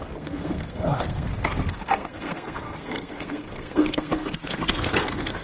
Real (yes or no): no